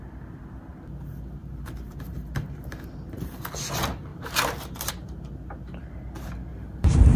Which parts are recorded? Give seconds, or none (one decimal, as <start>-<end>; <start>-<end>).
0.0-1.4; 3.5-4.1; 4.9-6.5